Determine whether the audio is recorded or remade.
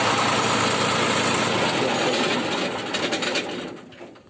recorded